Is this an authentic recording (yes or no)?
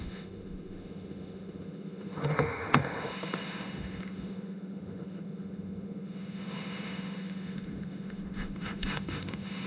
no